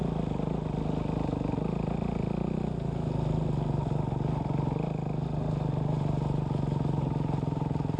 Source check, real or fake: real